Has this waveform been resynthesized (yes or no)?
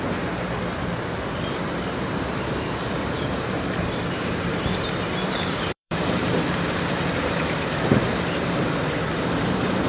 yes